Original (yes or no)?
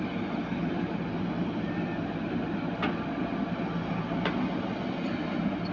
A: yes